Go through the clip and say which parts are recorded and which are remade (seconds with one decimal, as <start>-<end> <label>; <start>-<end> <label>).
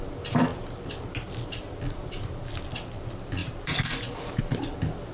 0.0-3.4 recorded; 3.4-4.4 remade; 4.4-5.1 recorded